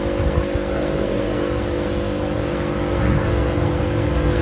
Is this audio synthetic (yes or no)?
yes